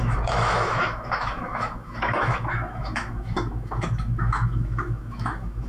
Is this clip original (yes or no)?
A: no